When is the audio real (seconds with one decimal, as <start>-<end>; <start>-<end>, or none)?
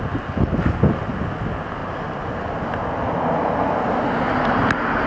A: 0.0-1.8; 2.6-5.1